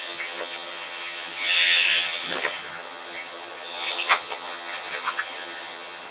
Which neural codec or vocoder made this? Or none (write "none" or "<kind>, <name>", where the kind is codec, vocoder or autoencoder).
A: vocoder, HiFi-GAN